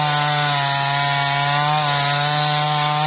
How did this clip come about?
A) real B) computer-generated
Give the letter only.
A